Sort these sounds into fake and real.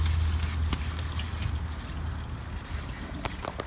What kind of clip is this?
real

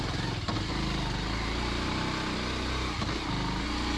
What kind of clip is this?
real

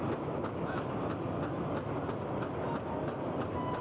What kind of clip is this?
real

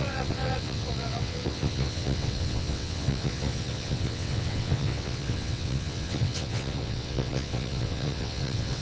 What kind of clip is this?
fake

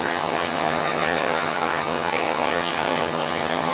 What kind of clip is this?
fake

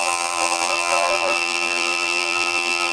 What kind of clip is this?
fake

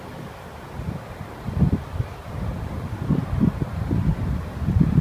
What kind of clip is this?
fake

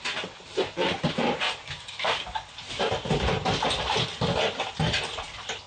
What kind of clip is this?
real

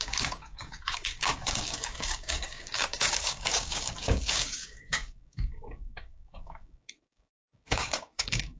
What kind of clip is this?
fake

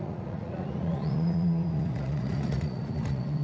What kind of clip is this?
fake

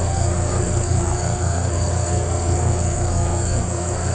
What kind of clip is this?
fake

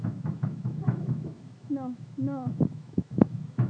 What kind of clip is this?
fake